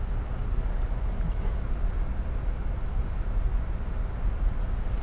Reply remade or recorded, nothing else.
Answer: recorded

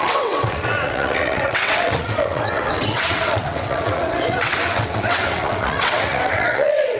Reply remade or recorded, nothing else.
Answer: remade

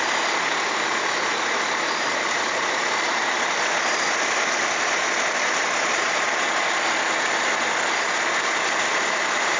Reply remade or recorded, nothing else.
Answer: recorded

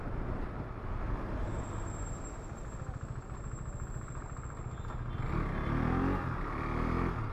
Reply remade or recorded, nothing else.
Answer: recorded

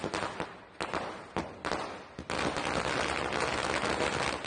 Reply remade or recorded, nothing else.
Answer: recorded